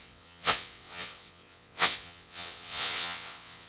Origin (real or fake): fake